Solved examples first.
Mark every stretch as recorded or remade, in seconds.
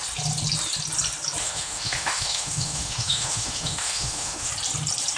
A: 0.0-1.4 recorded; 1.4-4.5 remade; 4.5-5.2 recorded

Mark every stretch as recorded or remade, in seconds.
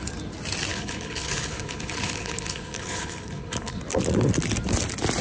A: 0.0-0.7 recorded; 0.7-3.8 remade; 3.8-5.2 recorded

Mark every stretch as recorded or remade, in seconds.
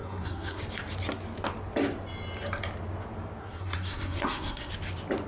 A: 0.0-0.6 remade; 0.6-3.4 recorded; 3.4-4.7 remade; 4.7-5.3 recorded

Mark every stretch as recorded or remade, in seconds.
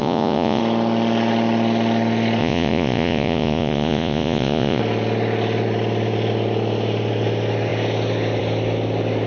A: 0.0-0.6 remade; 0.6-2.4 recorded; 2.4-4.8 remade; 4.8-9.3 recorded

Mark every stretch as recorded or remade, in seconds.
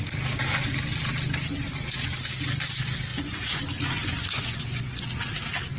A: 0.0-3.1 recorded; 3.1-3.6 remade; 3.6-4.0 recorded; 4.0-5.3 remade; 5.3-5.8 recorded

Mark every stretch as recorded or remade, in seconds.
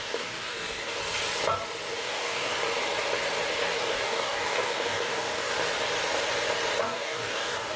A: 0.0-1.0 remade; 1.0-1.9 recorded; 1.9-2.5 remade; 2.5-3.8 recorded; 3.8-5.5 remade; 5.5-6.8 recorded; 6.8-7.8 remade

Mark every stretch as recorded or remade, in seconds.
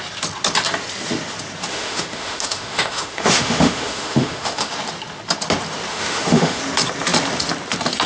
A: 0.0-1.7 recorded; 1.7-4.7 remade; 4.7-5.9 recorded; 5.9-6.6 remade; 6.6-8.1 recorded